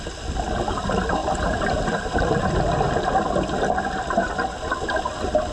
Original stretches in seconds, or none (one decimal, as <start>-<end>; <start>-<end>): 0.0-1.2; 4.3-5.5